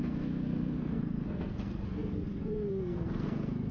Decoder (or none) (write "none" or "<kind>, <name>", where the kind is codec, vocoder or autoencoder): codec, SNAC